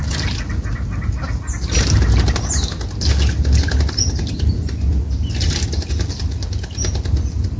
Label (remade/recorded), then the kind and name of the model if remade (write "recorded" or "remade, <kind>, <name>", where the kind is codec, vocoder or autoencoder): recorded